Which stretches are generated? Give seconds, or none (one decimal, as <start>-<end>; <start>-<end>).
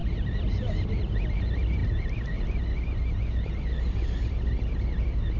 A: 0.0-0.9